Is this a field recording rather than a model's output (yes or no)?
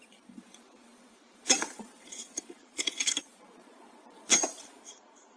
no